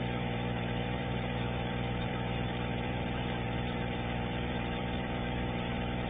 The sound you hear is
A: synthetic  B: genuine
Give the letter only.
A